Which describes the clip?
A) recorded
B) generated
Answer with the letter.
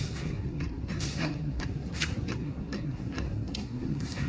B